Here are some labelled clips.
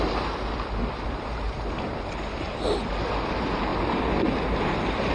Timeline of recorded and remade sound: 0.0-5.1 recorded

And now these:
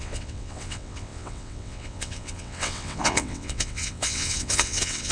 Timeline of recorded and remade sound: 0.0-5.1 remade

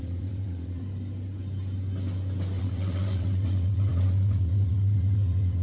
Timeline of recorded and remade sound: 0.0-0.8 remade; 0.8-2.6 recorded; 2.6-5.6 remade

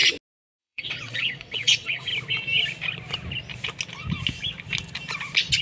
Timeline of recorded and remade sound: 0.0-0.6 recorded; 0.6-2.1 remade; 2.1-5.6 recorded

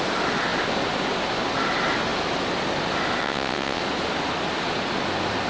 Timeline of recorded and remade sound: 0.0-3.2 recorded; 3.2-3.8 remade; 3.8-5.5 recorded

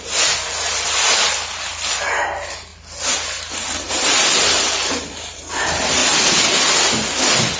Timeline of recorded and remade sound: 0.0-7.6 recorded

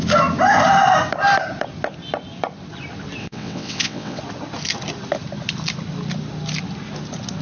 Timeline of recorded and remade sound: 0.0-3.2 recorded; 3.2-4.2 remade; 4.2-7.4 recorded